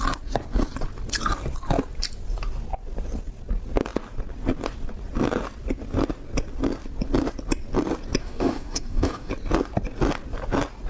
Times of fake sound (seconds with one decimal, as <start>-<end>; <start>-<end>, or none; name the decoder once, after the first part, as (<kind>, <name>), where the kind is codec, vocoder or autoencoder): 8.2-9.3 (codec, DAC)